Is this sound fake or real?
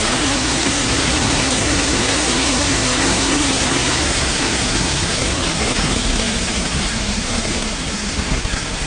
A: fake